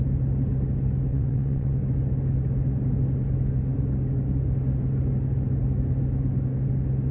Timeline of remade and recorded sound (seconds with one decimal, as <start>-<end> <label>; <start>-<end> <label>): 0.0-1.1 recorded; 1.1-1.8 remade; 1.8-7.1 recorded